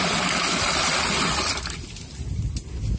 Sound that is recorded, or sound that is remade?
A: recorded